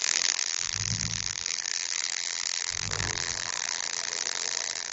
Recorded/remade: remade